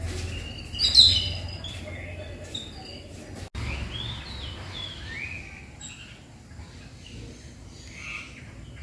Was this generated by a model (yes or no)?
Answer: no